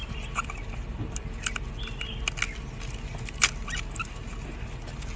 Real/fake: real